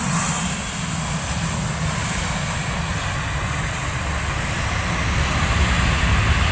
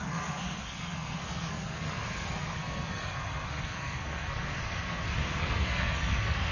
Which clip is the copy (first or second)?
second